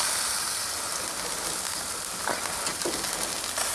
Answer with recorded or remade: recorded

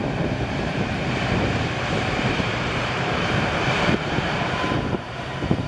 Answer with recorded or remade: remade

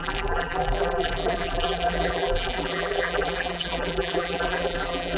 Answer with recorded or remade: remade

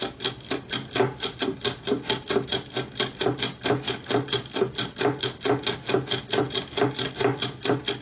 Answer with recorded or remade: recorded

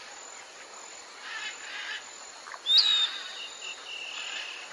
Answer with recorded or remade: recorded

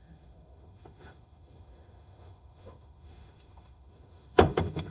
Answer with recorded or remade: remade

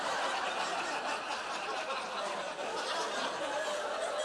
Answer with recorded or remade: recorded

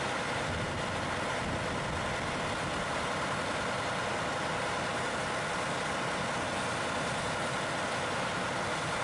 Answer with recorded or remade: recorded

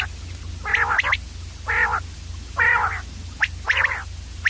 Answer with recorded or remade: recorded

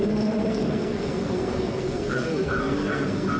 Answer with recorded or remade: remade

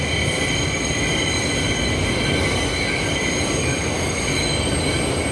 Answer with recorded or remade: recorded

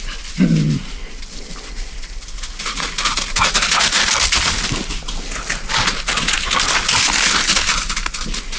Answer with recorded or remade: recorded